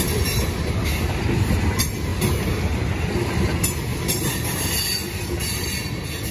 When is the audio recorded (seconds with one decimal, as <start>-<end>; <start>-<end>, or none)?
0.0-3.9; 4.7-6.3